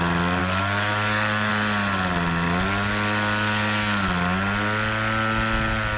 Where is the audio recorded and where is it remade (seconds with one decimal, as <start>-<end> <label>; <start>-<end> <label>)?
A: 0.0-0.4 recorded; 0.4-1.5 remade; 1.5-6.0 recorded